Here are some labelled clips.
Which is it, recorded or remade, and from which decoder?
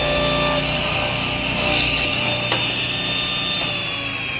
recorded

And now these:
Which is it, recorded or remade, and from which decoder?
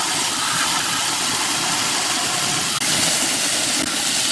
recorded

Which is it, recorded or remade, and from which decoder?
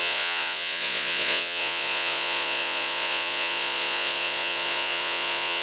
remade, vocoder, Vocos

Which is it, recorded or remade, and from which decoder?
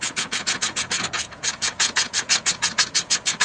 remade, vocoder, Vocos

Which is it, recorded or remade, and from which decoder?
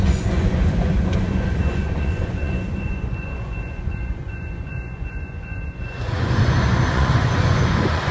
remade, vocoder, Vocos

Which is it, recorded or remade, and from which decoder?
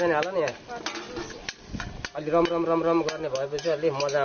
recorded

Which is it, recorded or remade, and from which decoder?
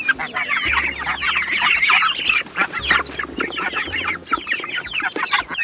recorded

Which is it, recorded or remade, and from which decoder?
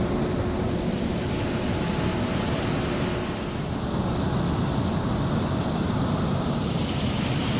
recorded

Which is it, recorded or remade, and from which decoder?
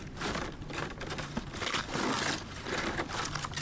recorded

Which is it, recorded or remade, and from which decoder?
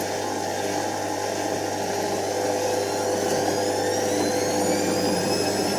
recorded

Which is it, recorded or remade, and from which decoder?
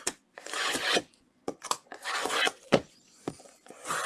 remade, vocoder, Vocos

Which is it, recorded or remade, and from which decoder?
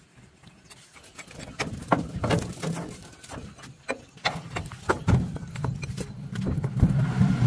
recorded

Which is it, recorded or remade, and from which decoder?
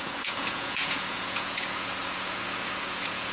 remade, vocoder, Vocos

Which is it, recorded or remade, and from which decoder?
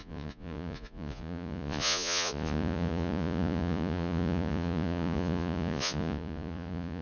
remade, vocoder, Vocos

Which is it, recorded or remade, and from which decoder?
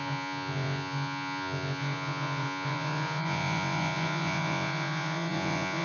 remade, vocoder, Vocos